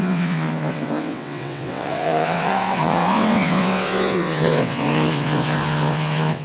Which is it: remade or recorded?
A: remade